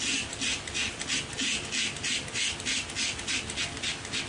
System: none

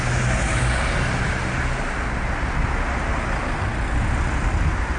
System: none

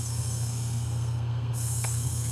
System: codec, SNAC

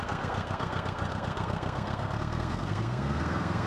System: codec, SNAC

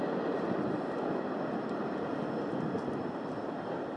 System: none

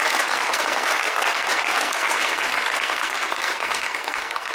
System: codec, SNAC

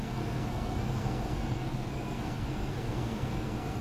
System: codec, SNAC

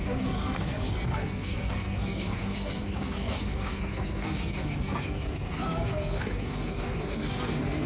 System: codec, SNAC